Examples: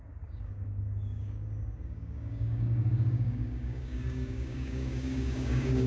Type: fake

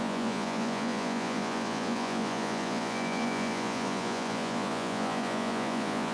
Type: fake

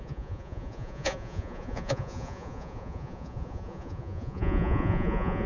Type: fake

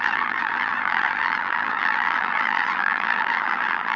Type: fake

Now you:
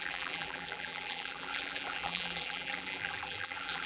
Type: fake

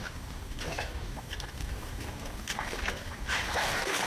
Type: fake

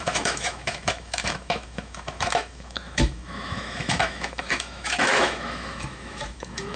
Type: fake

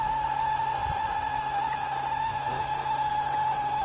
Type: real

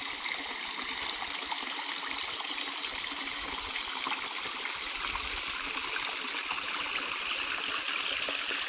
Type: real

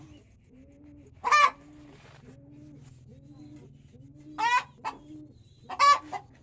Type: real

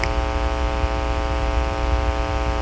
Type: real